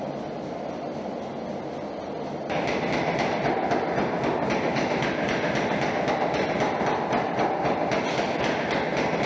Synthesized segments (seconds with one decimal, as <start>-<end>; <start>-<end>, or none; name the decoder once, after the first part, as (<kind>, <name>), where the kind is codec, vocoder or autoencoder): none